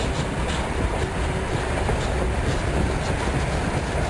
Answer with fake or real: real